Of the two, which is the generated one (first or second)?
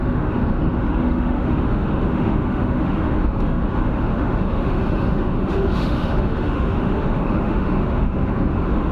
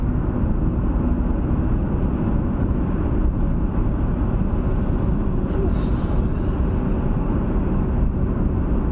first